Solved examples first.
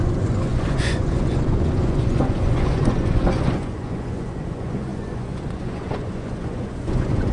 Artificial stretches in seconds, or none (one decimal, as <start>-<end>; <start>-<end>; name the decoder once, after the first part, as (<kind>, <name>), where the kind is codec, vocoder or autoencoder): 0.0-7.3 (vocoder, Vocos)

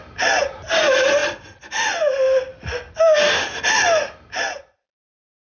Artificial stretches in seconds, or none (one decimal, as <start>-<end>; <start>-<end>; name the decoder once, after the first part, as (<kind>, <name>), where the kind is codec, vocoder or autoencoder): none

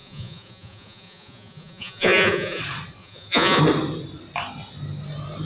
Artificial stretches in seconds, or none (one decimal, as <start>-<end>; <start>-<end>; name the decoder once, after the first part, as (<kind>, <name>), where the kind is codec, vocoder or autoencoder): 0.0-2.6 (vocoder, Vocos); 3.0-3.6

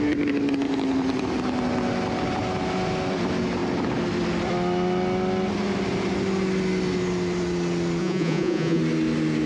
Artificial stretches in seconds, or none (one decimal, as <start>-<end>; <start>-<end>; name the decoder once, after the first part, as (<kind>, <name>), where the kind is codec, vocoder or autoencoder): 8.0-8.8 (vocoder, Vocos)